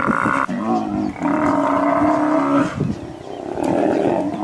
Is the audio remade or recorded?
recorded